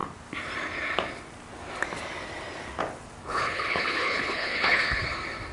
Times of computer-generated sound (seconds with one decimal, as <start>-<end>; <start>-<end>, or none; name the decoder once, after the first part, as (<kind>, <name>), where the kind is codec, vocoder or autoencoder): 3.2-5.0 (codec, HILCodec)